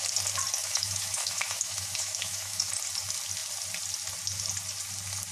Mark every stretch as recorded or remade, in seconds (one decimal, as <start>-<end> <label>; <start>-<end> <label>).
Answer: 0.0-0.6 recorded; 0.6-2.7 remade; 2.7-5.3 recorded